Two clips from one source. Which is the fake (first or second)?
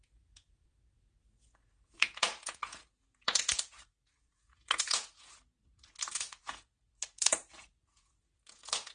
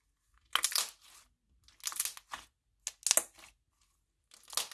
first